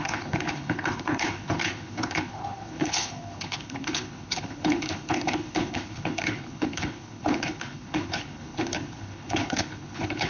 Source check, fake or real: fake